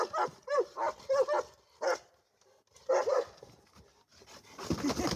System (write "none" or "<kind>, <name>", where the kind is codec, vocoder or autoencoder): none